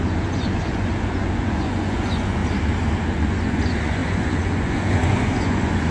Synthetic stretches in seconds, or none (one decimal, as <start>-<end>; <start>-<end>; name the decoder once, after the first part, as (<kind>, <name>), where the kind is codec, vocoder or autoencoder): 0.0-2.4 (vocoder, Vocos); 3.0-5.9